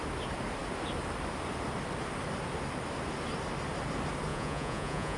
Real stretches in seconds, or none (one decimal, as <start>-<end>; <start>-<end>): 0.0-4.3